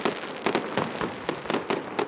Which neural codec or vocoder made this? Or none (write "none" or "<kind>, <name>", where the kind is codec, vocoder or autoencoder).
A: none